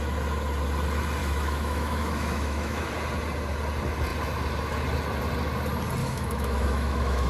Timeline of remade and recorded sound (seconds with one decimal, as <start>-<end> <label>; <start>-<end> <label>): 0.0-1.2 recorded; 1.2-2.9 remade; 2.9-6.0 recorded; 6.0-7.3 remade

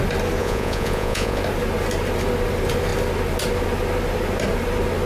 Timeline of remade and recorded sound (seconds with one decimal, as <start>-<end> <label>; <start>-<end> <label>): 0.0-0.4 recorded; 0.4-1.4 remade; 1.4-5.1 recorded

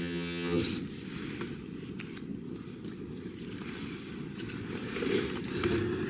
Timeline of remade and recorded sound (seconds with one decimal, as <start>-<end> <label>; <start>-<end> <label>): 0.0-0.6 remade; 0.6-6.1 recorded